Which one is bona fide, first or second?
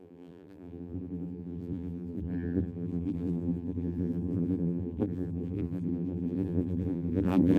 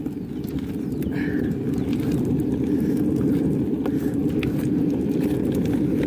second